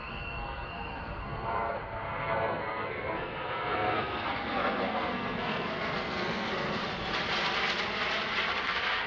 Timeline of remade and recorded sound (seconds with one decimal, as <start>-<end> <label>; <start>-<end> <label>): 0.0-6.8 remade; 6.8-8.6 recorded; 8.6-9.1 remade